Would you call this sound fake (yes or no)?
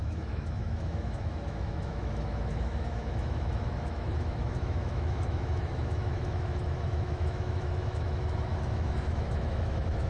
yes